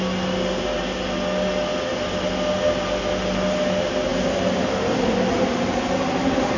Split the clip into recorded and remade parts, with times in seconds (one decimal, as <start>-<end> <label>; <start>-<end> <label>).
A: 0.0-1.7 recorded; 1.7-2.3 remade; 2.3-6.6 recorded